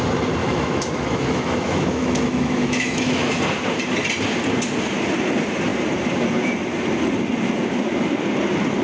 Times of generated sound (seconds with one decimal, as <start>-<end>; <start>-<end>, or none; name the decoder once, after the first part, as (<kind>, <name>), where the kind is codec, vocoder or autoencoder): 0.4-3.4 (autoencoder, DAC-VAE)